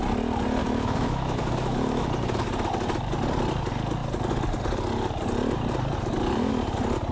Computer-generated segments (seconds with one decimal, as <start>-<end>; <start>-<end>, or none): 0.6-2.4